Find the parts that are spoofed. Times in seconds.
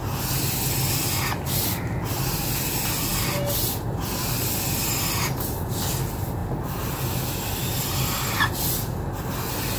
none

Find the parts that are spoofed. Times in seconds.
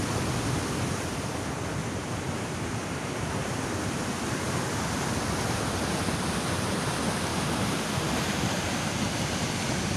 1.8-3.6; 7.3-8.4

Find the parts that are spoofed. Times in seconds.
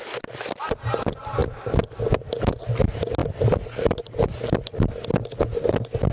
3.2-4.6